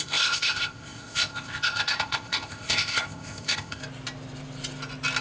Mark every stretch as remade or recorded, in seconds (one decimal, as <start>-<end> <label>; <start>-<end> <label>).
0.0-3.8 remade; 3.8-5.2 recorded